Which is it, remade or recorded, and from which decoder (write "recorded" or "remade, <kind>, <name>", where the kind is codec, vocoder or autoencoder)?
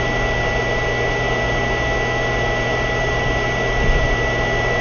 recorded